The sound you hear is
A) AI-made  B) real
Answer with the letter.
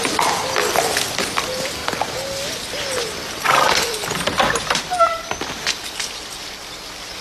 B